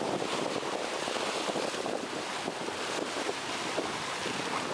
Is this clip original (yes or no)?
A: yes